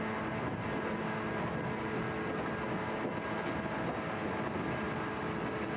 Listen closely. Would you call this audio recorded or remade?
recorded